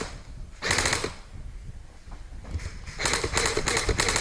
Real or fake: real